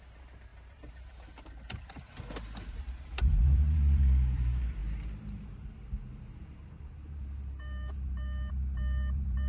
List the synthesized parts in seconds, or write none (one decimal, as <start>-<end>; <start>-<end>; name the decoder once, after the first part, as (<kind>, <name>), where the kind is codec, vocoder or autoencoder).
0.0-9.5 (vocoder, BigVGAN v2)